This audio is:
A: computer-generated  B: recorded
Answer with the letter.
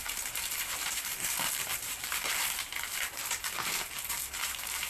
A